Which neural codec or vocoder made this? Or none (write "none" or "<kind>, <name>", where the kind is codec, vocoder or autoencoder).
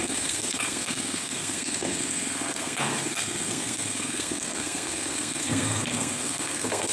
codec, SNAC